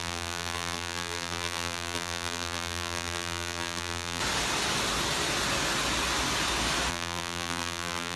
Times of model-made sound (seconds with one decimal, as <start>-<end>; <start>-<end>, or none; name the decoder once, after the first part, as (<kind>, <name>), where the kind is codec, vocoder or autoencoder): 0.0-4.2 (vocoder, BigVGAN v2); 6.9-8.2